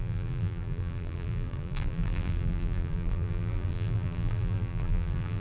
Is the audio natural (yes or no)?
no